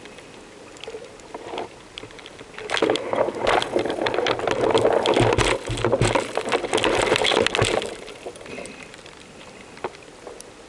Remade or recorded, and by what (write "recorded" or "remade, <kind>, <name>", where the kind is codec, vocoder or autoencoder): recorded